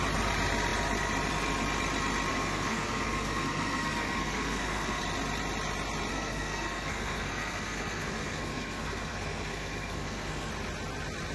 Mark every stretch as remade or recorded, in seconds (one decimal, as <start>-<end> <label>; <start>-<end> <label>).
0.0-2.3 recorded; 2.3-5.0 remade; 5.0-6.1 recorded; 6.1-10.5 remade; 10.5-11.3 recorded